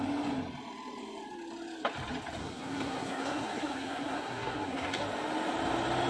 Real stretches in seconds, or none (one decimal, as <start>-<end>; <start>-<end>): 0.0-2.4; 5.0-6.1